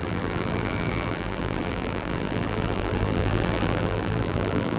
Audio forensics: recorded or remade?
remade